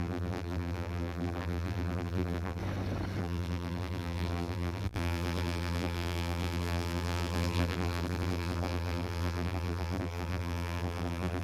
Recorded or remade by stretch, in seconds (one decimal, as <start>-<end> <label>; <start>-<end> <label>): 0.0-2.6 remade; 2.6-3.2 recorded; 3.2-11.4 remade